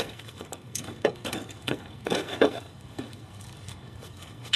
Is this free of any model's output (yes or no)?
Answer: no